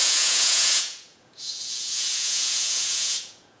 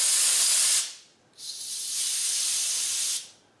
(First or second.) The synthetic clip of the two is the first